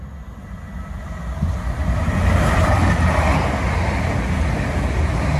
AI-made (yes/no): no